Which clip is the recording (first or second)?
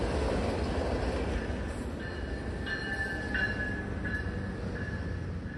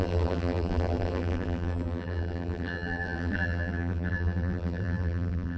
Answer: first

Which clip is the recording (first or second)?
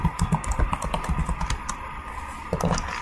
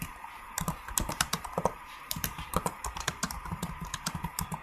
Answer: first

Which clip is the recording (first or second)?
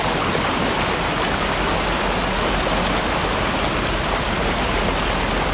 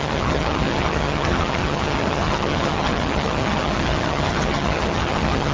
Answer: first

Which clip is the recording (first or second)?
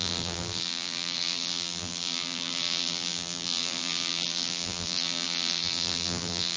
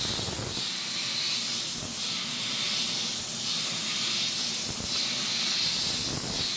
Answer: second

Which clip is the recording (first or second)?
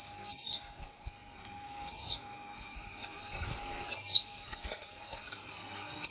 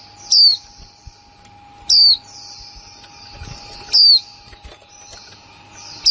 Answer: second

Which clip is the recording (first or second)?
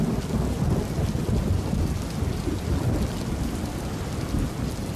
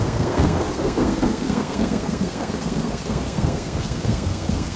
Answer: first